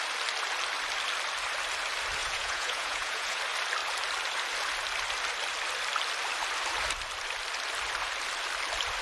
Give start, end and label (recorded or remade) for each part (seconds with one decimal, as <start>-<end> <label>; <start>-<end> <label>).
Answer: 0.0-2.2 recorded; 2.2-3.4 remade; 3.4-9.0 recorded

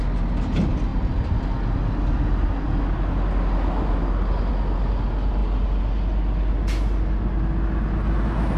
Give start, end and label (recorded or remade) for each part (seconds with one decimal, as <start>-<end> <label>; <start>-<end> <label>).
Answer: 0.0-8.6 recorded

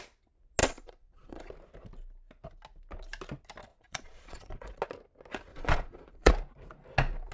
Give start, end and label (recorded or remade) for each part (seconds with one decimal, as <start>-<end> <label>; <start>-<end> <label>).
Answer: 0.0-0.6 recorded; 0.6-1.4 remade; 1.4-3.7 recorded; 3.7-4.8 remade; 4.8-5.5 recorded; 5.5-6.3 remade; 6.3-7.3 recorded